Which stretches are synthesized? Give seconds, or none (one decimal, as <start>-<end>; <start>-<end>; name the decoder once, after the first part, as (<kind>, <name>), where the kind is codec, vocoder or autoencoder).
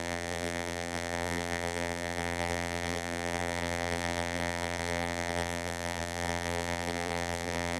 0.0-7.8 (vocoder, BigVGAN v2)